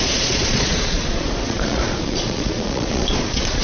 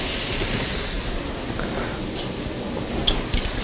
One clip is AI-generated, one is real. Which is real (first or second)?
second